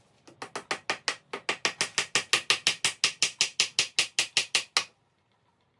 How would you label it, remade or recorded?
recorded